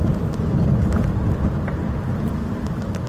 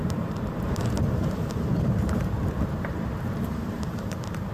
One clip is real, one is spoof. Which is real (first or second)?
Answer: first